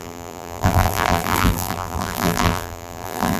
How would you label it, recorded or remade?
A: remade